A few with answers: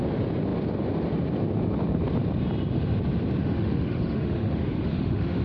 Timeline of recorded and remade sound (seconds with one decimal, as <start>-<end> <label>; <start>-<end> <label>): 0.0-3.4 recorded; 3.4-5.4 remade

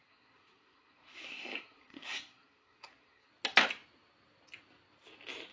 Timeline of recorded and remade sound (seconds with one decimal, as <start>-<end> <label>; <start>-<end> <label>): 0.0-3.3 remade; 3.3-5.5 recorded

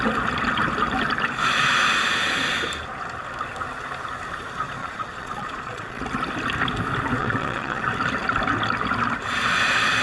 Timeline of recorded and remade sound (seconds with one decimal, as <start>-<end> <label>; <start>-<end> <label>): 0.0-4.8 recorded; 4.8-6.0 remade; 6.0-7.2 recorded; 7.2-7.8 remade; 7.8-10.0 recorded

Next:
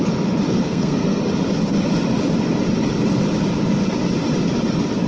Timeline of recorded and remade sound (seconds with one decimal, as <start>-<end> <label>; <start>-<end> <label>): 0.0-0.5 recorded; 0.5-1.2 remade; 1.2-5.1 recorded

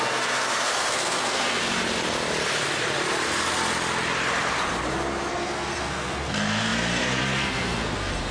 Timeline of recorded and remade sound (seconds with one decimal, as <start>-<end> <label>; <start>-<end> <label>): 0.0-1.6 remade; 1.6-5.3 recorded; 5.3-8.3 remade

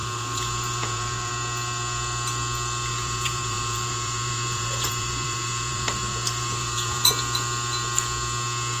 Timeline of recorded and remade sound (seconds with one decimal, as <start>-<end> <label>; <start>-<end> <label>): 0.0-1.3 remade; 1.3-2.9 recorded; 2.9-7.1 remade; 7.1-8.8 recorded